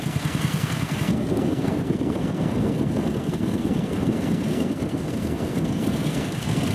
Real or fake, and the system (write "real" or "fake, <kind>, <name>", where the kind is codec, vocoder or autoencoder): fake, codec, SNAC